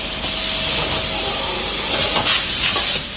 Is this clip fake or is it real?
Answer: real